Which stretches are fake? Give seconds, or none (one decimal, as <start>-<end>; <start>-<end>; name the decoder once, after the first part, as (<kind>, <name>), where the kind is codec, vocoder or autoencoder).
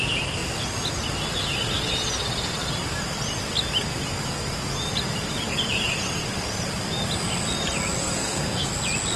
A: 8.0-8.7 (codec, SNAC)